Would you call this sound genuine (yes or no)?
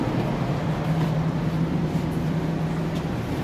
yes